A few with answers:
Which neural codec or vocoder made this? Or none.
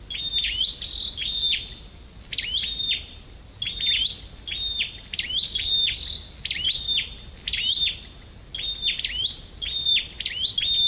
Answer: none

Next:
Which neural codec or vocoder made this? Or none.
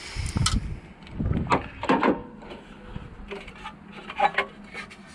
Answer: none